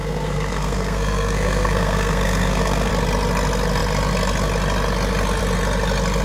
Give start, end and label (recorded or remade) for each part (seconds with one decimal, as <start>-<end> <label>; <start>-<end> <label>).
0.0-2.9 remade; 2.9-6.2 recorded